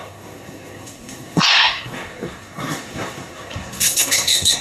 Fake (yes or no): yes